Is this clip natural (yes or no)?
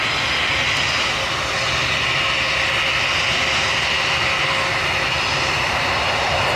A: yes